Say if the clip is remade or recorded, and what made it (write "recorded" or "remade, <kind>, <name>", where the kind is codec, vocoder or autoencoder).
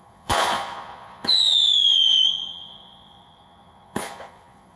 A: remade, vocoder, Vocos